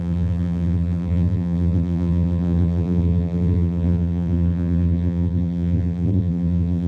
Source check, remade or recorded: remade